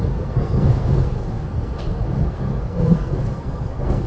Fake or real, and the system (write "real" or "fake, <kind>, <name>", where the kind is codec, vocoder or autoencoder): fake, codec, SNAC